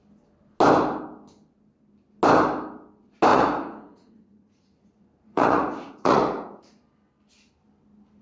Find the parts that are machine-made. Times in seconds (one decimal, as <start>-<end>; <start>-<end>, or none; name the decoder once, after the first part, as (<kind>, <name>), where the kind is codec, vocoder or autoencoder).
3.3-6.6 (vocoder, Vocos)